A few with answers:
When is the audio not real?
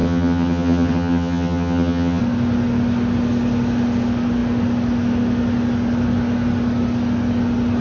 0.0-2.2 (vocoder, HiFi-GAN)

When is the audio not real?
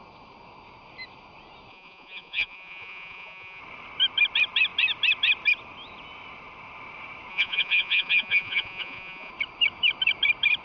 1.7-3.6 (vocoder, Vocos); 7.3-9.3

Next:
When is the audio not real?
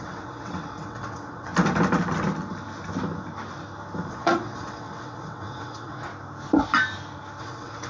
0.0-1.5 (vocoder, WaveNeXt); 4.1-6.1; 7.4-7.9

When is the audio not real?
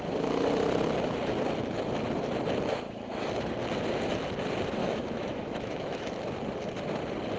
4.8-6.1 (autoencoder, DAC-VAE)